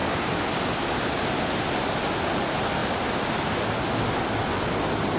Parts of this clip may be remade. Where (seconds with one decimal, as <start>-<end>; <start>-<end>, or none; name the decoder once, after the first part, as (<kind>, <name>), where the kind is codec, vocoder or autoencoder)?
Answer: none